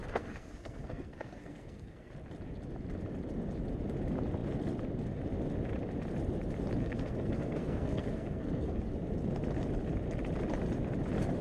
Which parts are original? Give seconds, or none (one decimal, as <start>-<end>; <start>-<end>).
2.1-6.8; 8.8-11.4